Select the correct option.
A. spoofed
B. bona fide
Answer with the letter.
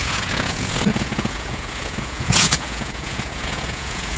A